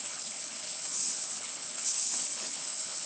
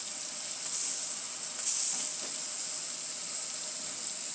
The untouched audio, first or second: second